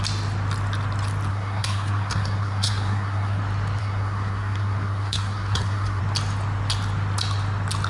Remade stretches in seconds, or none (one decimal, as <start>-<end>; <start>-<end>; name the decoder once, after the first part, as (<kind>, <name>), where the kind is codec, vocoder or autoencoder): 1.3-3.4 (codec, SNAC); 3.8-6.0